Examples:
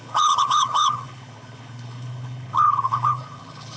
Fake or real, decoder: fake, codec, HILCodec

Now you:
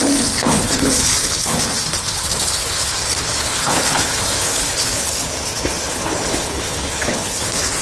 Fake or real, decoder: fake, codec, HILCodec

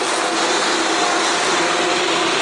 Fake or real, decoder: real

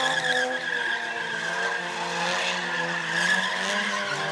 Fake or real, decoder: real